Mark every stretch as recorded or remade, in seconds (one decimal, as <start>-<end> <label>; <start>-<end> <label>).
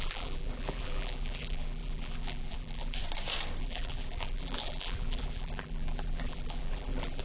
0.0-3.0 remade; 3.0-3.6 recorded; 3.6-7.2 remade